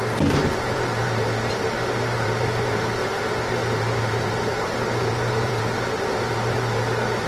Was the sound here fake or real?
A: fake